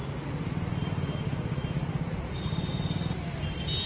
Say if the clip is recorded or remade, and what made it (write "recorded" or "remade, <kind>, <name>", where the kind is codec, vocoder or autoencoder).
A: recorded